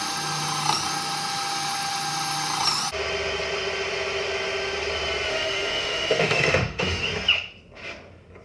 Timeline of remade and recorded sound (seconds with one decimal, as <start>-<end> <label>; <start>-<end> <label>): 0.0-5.3 recorded; 5.3-7.0 remade; 7.0-8.4 recorded